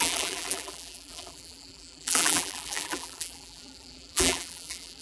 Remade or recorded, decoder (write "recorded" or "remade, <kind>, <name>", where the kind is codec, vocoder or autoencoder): remade, vocoder, BigVGAN v2